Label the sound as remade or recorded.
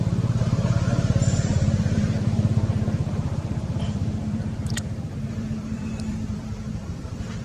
remade